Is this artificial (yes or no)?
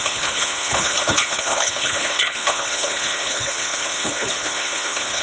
yes